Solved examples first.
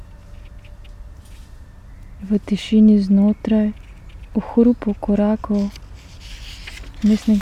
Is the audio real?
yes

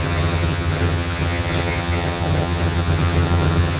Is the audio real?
no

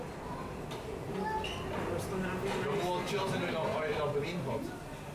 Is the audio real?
yes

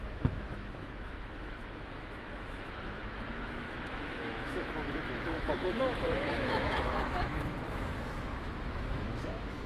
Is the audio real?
no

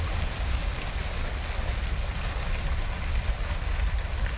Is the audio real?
yes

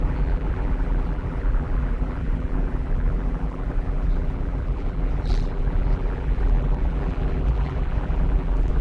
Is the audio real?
no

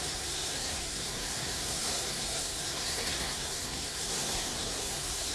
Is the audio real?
no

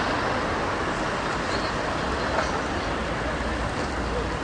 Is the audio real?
yes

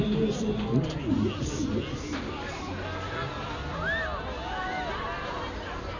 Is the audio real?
yes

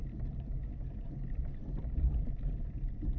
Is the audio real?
yes